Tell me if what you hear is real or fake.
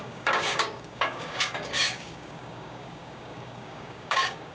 fake